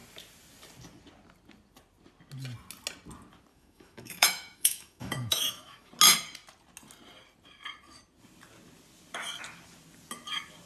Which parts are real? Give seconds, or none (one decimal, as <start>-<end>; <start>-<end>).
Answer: 0.0-3.5; 5.9-10.7